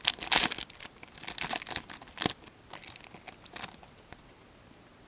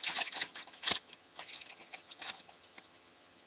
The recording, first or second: first